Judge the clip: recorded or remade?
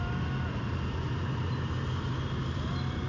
recorded